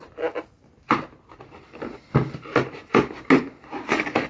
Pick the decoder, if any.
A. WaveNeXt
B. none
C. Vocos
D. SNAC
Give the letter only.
B